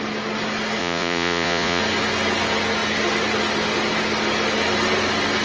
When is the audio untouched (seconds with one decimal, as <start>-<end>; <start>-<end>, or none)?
0.0-0.8; 1.8-5.4